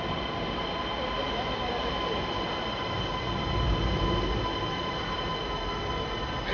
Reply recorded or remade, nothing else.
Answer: recorded